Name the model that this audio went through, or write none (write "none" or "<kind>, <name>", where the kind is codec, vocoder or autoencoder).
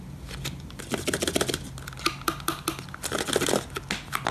none